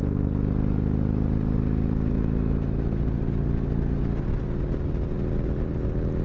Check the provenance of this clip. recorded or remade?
recorded